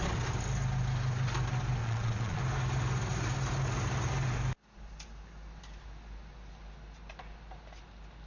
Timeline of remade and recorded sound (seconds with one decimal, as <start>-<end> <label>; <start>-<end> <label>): 0.0-1.8 recorded; 1.8-2.4 remade; 2.4-8.3 recorded